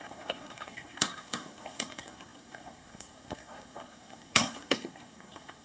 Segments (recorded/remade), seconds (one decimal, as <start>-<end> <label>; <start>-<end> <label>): 0.0-5.6 remade